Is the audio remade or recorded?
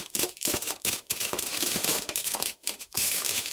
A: remade